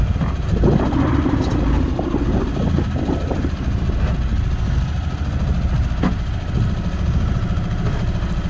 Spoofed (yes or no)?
no